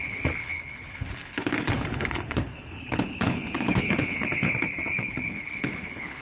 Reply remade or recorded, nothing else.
remade